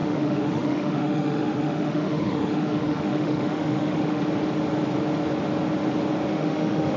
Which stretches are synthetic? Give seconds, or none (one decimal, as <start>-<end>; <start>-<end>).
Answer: 0.0-4.2; 6.3-7.0